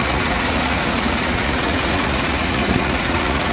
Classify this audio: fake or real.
fake